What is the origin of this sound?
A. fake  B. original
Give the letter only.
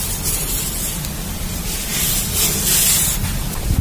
B